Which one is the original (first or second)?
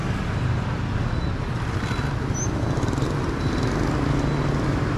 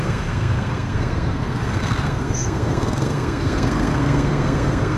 first